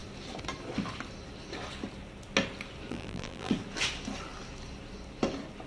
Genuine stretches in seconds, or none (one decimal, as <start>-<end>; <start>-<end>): 0.0-2.9; 3.5-5.7